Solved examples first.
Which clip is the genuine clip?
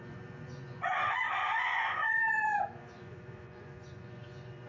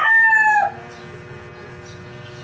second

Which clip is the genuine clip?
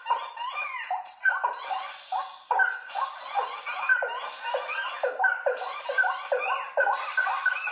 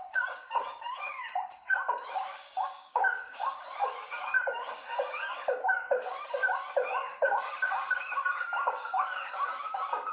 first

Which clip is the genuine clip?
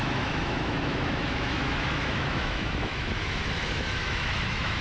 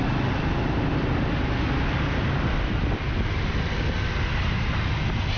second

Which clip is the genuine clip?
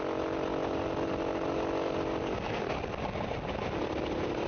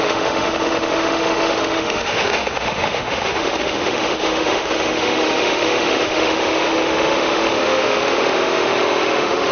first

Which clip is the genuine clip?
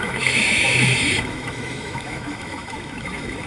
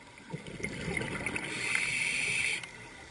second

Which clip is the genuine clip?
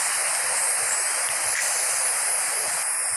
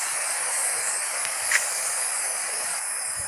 first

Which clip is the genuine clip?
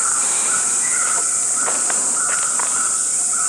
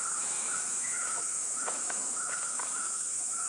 first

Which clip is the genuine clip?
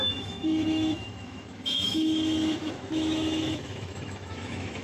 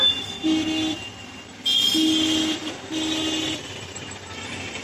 second